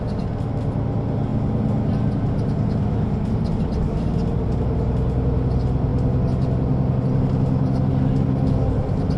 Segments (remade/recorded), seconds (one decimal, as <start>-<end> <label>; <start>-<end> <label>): 0.0-9.2 recorded